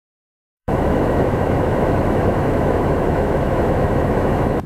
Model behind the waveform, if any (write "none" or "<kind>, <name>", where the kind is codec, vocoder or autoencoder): autoencoder, DAC-VAE